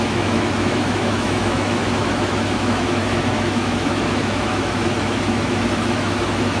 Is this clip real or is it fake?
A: fake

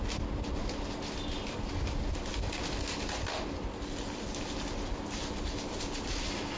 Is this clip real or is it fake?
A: real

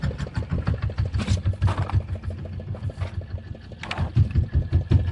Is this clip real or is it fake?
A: real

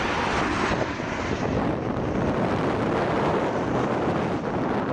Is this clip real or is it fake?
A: real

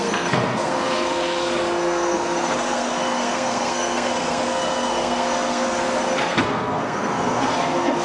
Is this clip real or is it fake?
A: fake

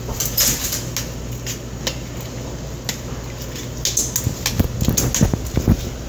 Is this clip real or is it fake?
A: real